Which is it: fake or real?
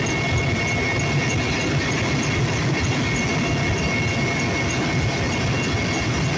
real